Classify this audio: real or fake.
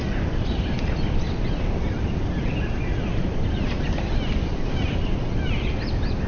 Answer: real